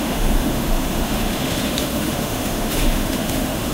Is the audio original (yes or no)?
no